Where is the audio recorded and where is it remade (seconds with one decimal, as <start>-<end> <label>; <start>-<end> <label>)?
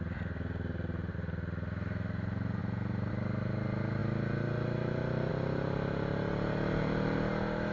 0.0-7.7 recorded